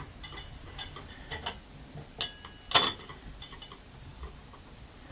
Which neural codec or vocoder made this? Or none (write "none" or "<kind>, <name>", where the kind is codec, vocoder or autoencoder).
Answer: none